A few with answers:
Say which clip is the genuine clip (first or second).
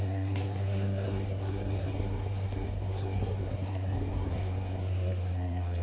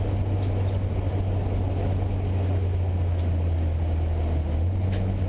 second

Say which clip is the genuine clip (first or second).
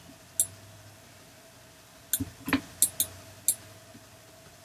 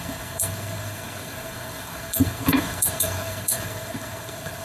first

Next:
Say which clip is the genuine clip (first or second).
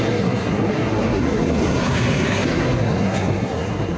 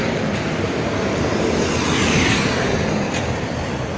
second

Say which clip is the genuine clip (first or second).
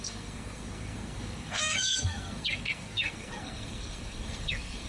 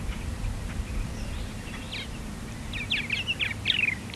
second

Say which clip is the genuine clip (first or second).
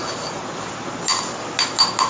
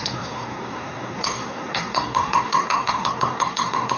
first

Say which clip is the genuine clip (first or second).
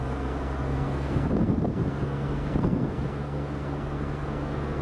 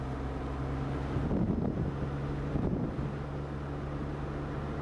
second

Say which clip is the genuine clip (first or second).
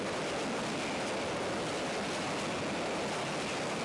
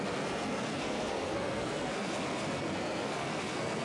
first